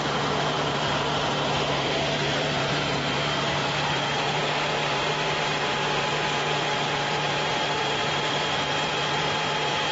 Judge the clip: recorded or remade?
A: remade